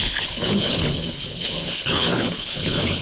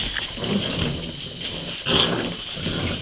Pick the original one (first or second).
second